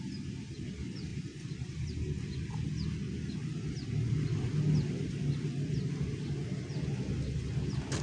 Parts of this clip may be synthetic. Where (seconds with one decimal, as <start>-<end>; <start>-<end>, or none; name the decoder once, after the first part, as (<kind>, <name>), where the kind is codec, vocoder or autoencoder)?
none